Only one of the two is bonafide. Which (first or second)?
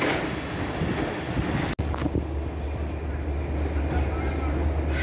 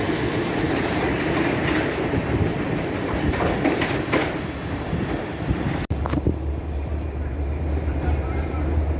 first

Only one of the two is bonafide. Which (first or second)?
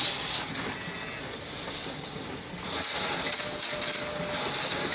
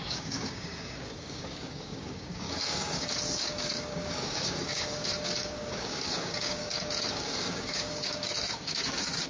first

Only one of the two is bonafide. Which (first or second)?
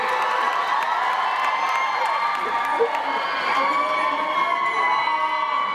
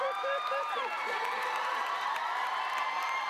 first